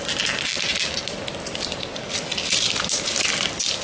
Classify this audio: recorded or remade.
recorded